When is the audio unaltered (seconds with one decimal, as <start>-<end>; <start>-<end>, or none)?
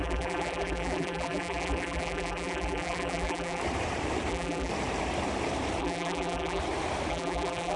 3.6-4.3; 4.7-5.8; 6.6-7.1